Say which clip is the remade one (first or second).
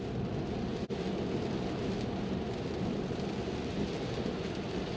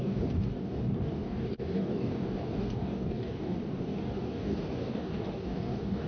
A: second